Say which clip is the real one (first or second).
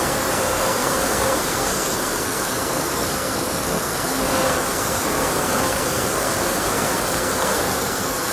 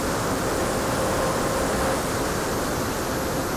second